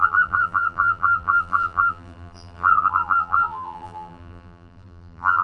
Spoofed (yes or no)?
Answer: yes